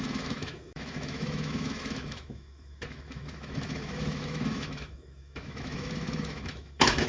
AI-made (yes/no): yes